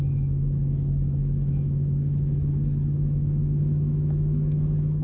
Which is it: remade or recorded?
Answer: remade